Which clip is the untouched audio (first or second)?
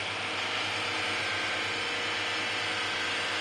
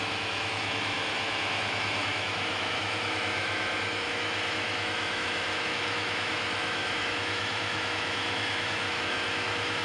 first